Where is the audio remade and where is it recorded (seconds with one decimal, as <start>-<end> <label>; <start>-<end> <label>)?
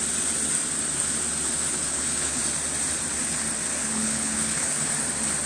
0.0-1.7 recorded; 1.7-2.4 remade; 2.4-3.8 recorded; 3.8-4.9 remade; 4.9-5.5 recorded